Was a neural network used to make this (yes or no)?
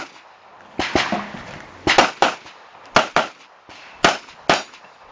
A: no